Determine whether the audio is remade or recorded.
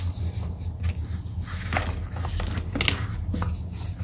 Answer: recorded